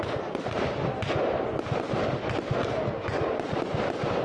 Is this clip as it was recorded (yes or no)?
yes